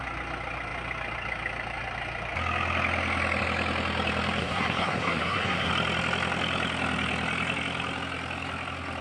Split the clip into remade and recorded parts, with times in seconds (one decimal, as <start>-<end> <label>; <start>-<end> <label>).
0.0-4.4 recorded; 4.4-5.7 remade; 5.7-9.0 recorded